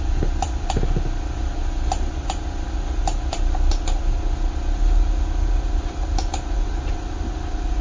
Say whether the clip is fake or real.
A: real